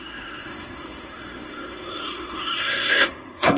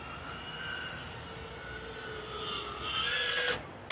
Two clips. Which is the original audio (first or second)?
second